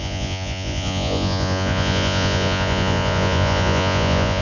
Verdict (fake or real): fake